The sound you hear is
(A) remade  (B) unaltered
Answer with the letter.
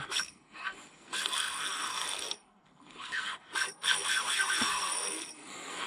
A